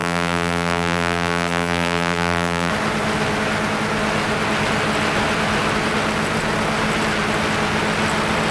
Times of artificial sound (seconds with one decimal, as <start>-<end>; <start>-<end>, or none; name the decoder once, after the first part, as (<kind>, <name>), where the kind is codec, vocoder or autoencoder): 0.0-2.7 (vocoder, BigVGAN v2)